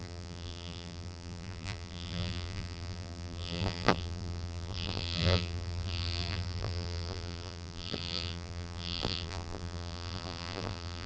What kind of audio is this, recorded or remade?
remade